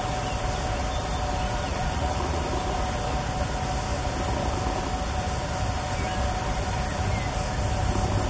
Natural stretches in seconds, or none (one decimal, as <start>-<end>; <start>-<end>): 0.0-1.7; 2.4-8.3